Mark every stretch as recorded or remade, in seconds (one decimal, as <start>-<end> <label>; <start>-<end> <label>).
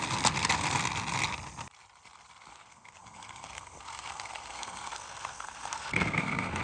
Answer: 0.0-2.5 recorded; 2.5-6.6 remade